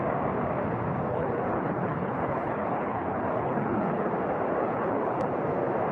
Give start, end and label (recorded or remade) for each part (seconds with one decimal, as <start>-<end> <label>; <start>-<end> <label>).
0.0-1.1 recorded; 1.1-4.1 remade; 4.1-4.6 recorded; 4.6-5.3 remade; 5.3-5.9 recorded